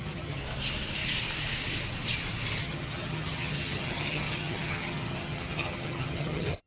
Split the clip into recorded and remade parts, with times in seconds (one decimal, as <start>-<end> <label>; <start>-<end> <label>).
0.0-0.4 remade; 0.4-2.6 recorded; 2.6-6.7 remade